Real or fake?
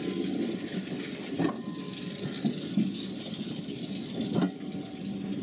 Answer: real